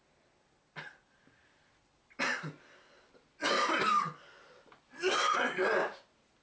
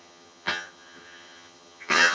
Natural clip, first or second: first